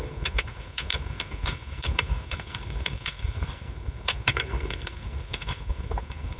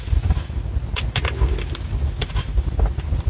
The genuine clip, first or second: second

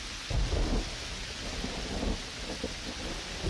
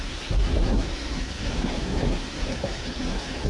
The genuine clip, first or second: first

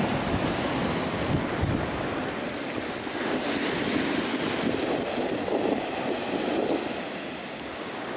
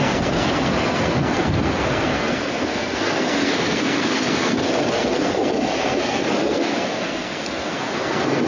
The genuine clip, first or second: first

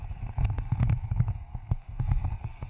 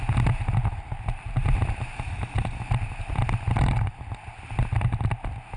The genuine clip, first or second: second